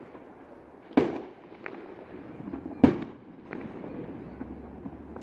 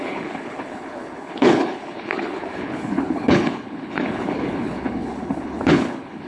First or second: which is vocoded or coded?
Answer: second